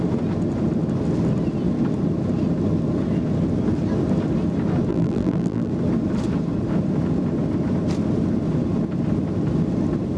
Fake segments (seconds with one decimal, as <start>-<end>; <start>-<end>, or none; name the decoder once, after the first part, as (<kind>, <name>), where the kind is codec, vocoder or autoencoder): 4.9-5.7 (vocoder, BigVGAN v2)